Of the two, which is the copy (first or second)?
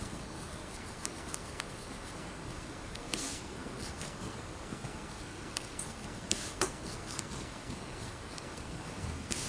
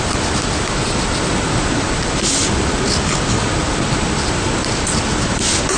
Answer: first